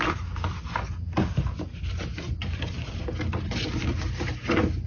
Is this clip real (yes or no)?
yes